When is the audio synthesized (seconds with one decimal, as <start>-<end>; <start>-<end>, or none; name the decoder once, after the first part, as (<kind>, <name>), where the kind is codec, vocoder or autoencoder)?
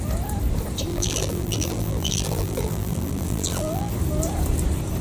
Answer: 0.9-3.9 (vocoder, BigVGAN v2)